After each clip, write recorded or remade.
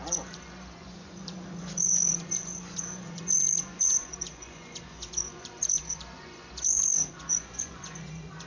remade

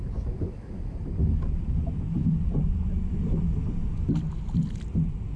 recorded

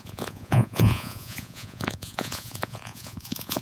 remade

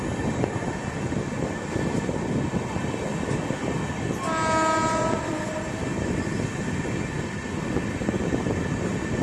recorded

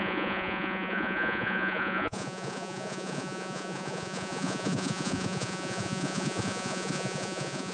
remade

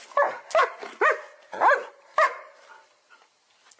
recorded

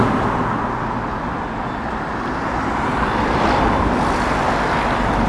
recorded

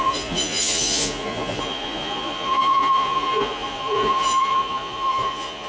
remade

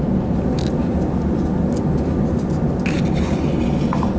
recorded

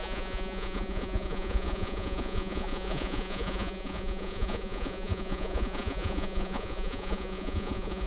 remade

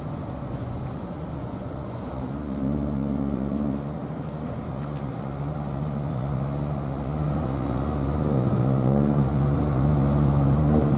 remade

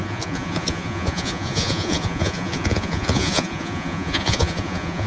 remade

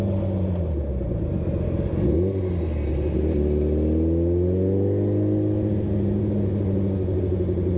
recorded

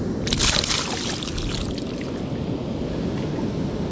recorded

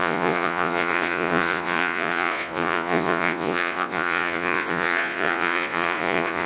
remade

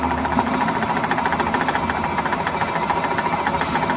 recorded